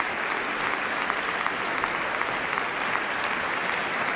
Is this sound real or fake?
real